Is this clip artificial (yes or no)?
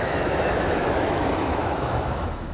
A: yes